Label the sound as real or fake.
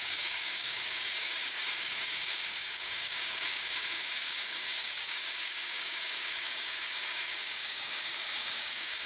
fake